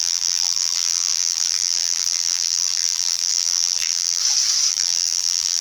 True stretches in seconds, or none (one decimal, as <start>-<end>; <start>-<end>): 4.2-4.7